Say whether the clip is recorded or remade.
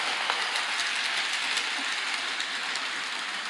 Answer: recorded